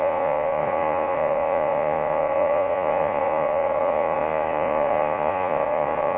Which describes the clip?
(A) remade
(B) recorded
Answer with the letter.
A